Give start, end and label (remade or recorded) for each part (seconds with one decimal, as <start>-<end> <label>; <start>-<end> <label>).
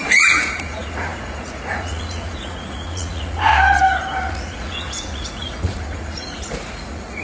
0.0-3.5 remade; 3.5-4.3 recorded; 4.3-7.2 remade